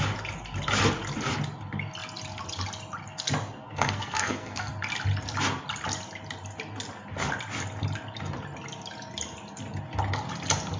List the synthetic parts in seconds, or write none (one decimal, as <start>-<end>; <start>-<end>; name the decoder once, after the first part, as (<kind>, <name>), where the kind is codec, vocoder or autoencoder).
3.6-4.7 (codec, SNAC)